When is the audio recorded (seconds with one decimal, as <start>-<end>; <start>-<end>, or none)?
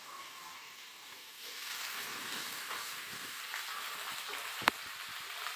3.4-5.6